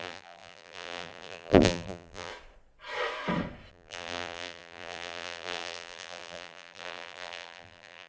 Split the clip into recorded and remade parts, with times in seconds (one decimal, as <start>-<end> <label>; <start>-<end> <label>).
0.0-2.3 remade; 2.3-3.7 recorded; 3.7-8.1 remade